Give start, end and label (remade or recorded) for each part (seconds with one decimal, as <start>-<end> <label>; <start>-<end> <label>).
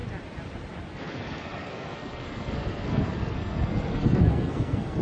0.0-0.9 recorded; 0.9-5.0 remade